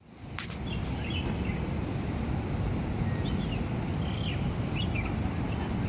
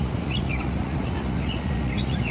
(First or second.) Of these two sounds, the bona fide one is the first